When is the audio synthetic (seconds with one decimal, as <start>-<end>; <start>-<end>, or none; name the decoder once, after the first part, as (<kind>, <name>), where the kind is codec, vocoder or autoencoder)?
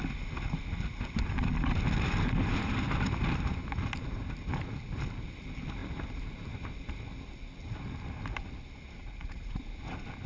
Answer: 9.0-9.6 (vocoder, Vocos)